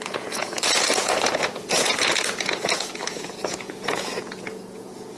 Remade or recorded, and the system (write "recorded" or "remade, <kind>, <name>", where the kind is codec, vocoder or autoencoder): remade, vocoder, Vocos